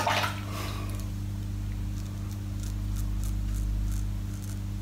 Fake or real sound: real